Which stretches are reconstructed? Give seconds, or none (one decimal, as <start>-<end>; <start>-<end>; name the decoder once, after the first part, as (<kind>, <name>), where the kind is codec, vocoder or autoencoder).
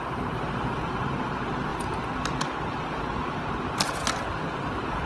none